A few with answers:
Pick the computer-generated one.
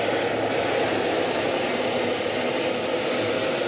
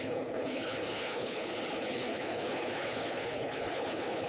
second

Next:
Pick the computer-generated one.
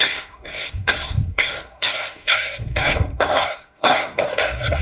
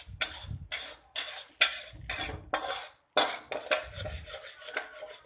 first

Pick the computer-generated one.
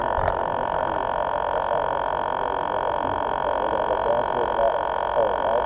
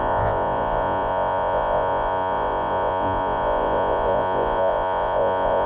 second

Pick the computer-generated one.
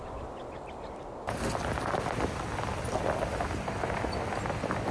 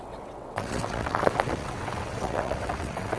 second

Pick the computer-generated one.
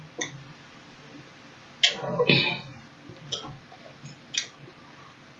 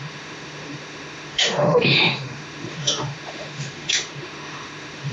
second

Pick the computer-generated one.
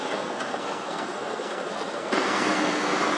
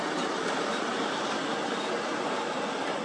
first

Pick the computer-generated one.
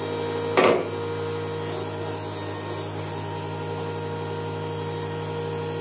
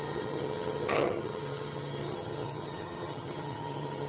second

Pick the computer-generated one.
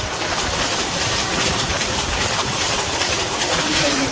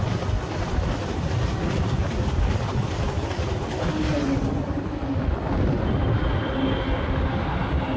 first